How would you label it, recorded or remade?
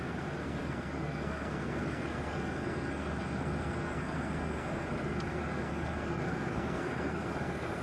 remade